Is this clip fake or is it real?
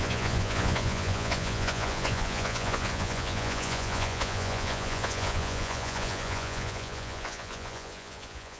fake